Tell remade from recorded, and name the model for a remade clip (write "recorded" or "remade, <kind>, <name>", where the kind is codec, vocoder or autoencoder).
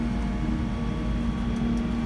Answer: recorded